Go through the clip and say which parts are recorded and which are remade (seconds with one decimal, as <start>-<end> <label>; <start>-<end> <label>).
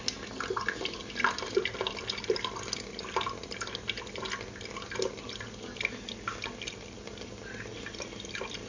0.0-8.7 recorded